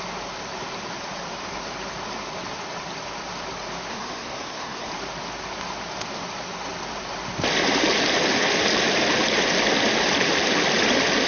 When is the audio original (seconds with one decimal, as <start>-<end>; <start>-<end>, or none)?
0.0-3.9; 4.9-11.3